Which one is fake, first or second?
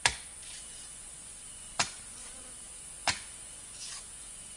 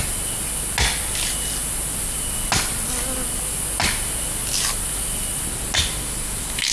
first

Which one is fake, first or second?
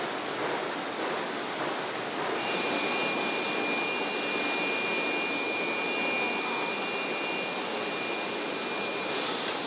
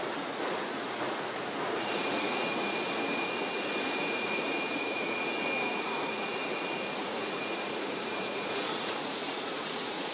second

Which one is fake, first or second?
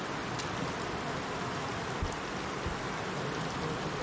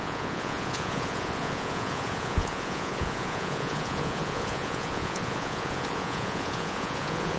second